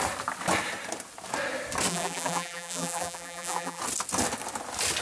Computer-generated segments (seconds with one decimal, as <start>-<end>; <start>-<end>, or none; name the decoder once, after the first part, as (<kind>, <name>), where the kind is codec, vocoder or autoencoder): 1.9-3.8 (vocoder, BigVGAN v2)

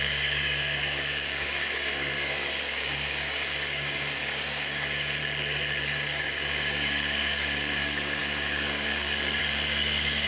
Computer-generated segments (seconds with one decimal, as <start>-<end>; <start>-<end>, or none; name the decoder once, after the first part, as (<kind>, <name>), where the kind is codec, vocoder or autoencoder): 0.0-5.2 (codec, DAC); 5.8-10.3

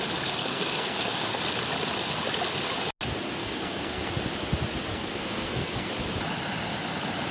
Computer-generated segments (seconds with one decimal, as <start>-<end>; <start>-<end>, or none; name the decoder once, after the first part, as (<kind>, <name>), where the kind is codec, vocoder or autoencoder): 0.4-1.4 (codec, SNAC); 3.4-4.1; 4.9-5.9

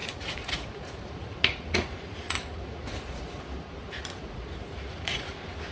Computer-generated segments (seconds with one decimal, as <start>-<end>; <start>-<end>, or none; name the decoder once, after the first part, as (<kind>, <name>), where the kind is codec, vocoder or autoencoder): 0.0-3.4 (vocoder, Vocos); 3.8-5.3

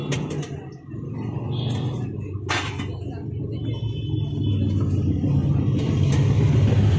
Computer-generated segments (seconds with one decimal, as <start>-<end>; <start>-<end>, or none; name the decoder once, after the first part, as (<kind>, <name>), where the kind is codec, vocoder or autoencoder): none

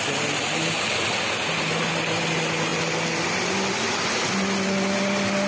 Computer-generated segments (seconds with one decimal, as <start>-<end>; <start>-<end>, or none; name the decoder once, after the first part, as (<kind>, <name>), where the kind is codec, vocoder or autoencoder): none

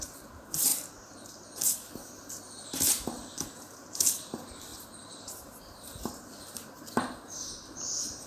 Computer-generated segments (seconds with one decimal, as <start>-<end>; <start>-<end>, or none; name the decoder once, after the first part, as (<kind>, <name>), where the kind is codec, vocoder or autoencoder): 0.0-0.7 (vocoder, BigVGAN v2); 1.9-8.3

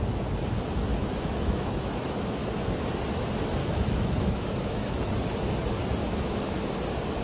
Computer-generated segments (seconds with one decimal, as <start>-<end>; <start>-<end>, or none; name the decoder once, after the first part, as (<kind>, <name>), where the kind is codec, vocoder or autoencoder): 0.9-2.5 (autoencoder, DAC-VAE); 3.6-5.1; 6.0-6.7